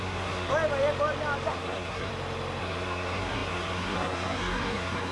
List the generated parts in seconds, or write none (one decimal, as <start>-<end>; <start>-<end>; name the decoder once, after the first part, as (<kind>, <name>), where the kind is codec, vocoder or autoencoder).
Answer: 0.0-0.5 (codec, SNAC); 1.5-2.1; 2.6-5.1

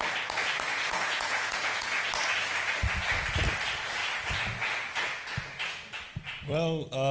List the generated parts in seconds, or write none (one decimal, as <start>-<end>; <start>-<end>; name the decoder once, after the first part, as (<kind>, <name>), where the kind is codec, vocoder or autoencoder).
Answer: 0.7-2.0 (vocoder, Vocos)

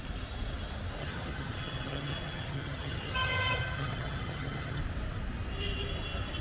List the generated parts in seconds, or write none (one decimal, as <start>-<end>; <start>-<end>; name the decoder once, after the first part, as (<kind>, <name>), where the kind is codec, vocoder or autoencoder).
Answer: 1.0-4.8 (vocoder, HiFi-GAN)

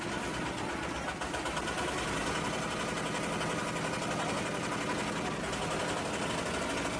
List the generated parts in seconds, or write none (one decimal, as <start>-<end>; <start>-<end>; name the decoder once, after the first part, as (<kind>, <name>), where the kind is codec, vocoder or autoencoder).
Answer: none

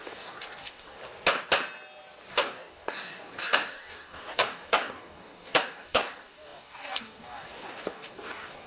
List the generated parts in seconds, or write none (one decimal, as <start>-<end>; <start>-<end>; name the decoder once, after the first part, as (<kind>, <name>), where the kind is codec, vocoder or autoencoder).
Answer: 0.0-1.0 (codec, DAC); 2.3-8.7

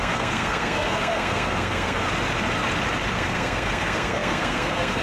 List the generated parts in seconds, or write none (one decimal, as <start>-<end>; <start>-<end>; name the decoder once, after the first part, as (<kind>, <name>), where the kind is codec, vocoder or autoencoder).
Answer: 0.0-2.0 (codec, SNAC); 3.1-5.0